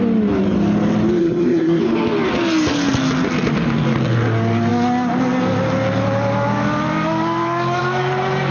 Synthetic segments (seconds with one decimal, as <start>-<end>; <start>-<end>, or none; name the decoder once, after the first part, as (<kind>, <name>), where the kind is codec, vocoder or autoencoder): 1.2-1.8 (codec, SNAC)

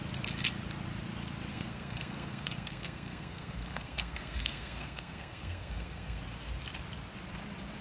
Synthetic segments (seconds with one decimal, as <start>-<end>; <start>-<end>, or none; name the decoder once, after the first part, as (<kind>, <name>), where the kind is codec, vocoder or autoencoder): 1.5-6.2 (codec, SNAC)

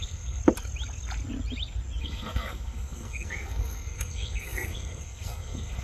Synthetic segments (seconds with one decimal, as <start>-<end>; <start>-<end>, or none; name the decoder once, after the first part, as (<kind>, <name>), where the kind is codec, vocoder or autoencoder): 0.0-0.4 (codec, SNAC); 2.0-5.8

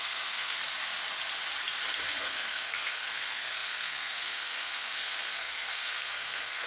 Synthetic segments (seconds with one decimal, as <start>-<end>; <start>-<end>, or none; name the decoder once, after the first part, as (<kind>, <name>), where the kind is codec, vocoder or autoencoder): 0.0-0.6 (codec, SNAC); 2.2-6.7

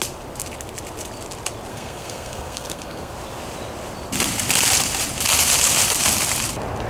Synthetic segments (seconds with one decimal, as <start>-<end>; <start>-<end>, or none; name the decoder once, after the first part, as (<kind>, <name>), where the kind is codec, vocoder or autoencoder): 1.7-3.1 (codec, SNAC)